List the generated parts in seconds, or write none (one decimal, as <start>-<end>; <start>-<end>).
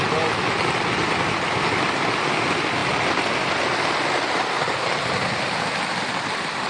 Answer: none